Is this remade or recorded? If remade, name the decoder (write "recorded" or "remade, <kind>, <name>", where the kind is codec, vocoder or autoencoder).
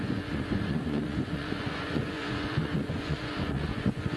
remade, vocoder, Vocos